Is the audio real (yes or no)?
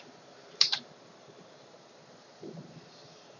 no